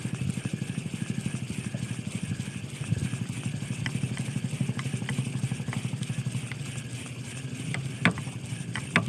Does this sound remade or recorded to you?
recorded